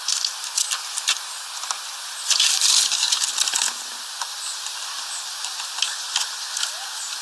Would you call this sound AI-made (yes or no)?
no